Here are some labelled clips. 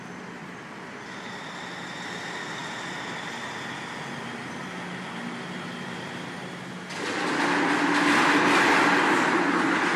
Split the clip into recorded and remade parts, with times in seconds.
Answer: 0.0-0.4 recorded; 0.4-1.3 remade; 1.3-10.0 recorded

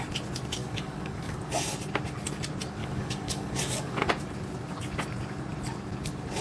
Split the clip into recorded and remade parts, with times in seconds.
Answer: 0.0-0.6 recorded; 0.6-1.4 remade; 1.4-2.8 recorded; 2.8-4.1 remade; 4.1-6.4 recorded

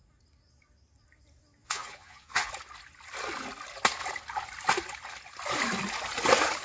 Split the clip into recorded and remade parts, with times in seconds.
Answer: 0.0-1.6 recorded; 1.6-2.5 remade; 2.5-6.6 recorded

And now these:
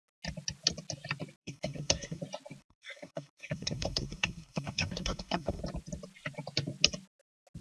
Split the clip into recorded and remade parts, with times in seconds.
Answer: 0.0-1.4 recorded; 1.4-2.2 remade; 2.2-2.6 recorded; 2.6-5.6 remade; 5.6-7.6 recorded